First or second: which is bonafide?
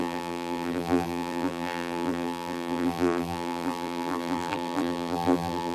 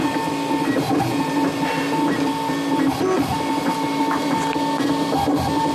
second